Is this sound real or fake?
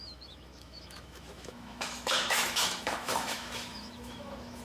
fake